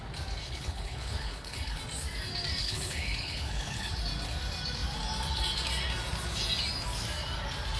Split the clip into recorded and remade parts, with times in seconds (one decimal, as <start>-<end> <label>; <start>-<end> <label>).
0.0-0.4 recorded; 0.4-1.8 remade; 1.8-2.6 recorded; 2.6-3.9 remade; 3.9-7.8 recorded